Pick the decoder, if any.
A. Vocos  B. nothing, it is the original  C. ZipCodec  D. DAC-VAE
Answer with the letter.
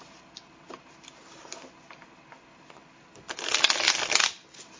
B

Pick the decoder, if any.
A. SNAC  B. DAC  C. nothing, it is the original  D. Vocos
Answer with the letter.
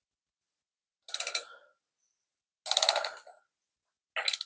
C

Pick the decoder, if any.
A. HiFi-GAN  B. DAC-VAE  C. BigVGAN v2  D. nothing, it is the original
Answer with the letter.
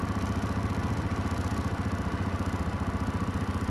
D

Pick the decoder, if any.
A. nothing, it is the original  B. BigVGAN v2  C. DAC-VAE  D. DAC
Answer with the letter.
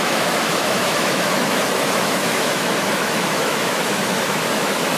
C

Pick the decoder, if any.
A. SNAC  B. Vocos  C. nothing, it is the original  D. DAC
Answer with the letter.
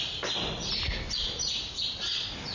C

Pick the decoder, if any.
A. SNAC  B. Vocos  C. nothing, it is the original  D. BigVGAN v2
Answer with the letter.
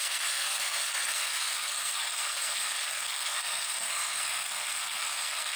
A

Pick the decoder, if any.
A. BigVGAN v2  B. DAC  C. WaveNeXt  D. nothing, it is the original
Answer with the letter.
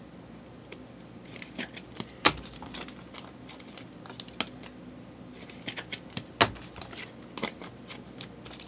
D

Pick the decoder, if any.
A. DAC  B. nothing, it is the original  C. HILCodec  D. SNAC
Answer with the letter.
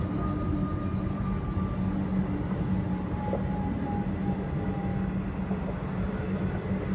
B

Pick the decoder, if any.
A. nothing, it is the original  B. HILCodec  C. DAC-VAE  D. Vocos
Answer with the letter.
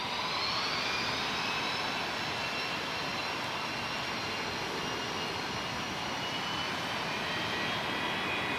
A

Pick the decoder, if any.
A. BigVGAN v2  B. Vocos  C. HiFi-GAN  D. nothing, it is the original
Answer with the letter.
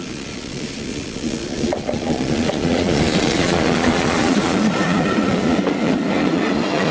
B